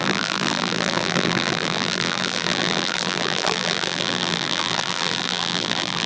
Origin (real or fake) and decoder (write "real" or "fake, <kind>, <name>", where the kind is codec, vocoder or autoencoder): fake, vocoder, BigVGAN v2